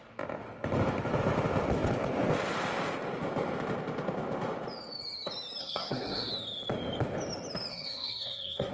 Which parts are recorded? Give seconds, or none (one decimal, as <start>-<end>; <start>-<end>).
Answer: 0.0-5.6; 6.3-7.7